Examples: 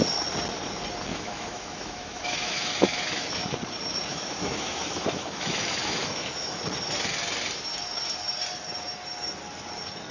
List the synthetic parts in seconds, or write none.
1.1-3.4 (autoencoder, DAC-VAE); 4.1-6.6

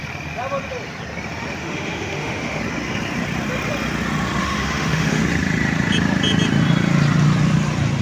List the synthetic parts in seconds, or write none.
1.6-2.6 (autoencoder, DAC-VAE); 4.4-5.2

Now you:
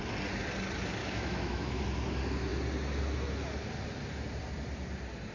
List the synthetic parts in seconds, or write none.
1.0-1.8 (autoencoder, DAC-VAE)

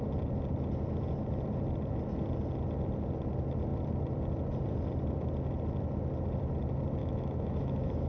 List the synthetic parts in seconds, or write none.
7.0-8.1 (autoencoder, DAC-VAE)